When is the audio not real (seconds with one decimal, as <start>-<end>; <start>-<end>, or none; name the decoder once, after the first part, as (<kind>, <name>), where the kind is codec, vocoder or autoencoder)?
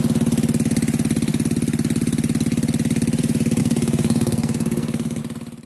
3.6-5.2 (codec, SNAC)